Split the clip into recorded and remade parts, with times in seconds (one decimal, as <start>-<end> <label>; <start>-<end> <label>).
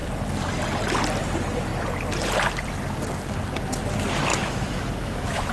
0.0-4.3 recorded; 4.3-5.5 remade